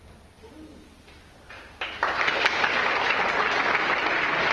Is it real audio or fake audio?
real